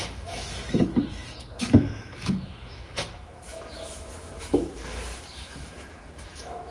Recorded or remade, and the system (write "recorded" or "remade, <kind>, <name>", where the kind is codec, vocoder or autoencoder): remade, autoencoder, DAC-VAE